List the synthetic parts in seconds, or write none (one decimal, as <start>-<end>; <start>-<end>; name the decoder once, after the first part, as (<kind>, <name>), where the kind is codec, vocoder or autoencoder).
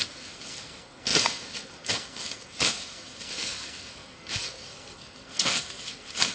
0.0-6.3 (codec, SNAC)